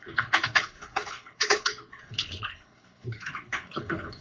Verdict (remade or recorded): remade